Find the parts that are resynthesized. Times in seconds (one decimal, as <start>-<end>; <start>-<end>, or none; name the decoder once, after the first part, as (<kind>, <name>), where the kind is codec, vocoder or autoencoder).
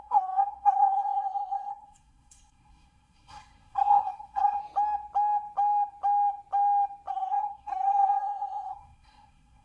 0.0-4.6 (codec, SNAC); 7.1-9.6